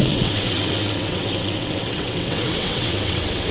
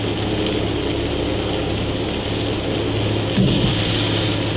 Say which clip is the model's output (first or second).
first